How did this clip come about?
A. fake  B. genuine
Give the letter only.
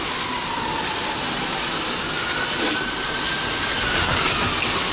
B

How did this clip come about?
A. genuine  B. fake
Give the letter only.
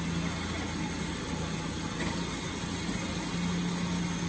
A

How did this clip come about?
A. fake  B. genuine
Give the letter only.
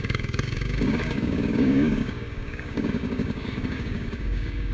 A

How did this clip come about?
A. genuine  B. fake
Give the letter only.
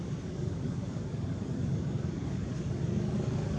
B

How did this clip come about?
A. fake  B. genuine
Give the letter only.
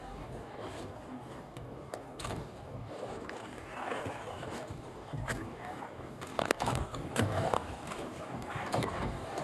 A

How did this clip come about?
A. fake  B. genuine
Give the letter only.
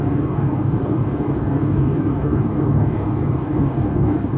A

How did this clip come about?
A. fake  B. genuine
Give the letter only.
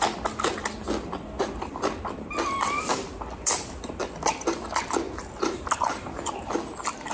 B